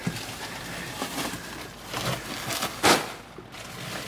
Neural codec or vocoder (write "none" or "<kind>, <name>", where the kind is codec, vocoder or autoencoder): none